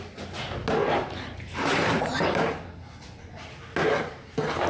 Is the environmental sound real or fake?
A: real